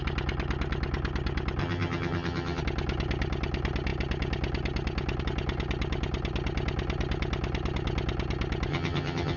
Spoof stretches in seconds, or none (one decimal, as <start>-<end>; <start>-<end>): 1.6-2.6; 8.7-9.4